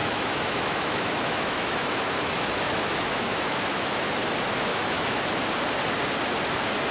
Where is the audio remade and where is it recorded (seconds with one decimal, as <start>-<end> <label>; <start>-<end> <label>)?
0.0-4.1 remade; 4.1-4.7 recorded; 4.7-5.2 remade; 5.2-6.9 recorded